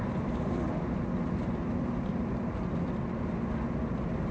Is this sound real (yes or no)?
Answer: yes